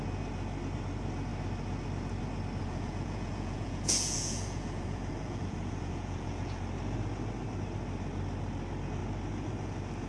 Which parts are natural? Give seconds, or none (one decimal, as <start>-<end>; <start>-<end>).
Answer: 0.0-2.6; 6.6-10.1